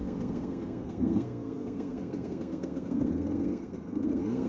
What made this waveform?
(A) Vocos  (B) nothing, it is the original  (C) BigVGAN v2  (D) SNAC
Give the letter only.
D